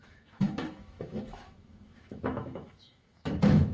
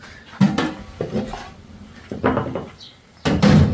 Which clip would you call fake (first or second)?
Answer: first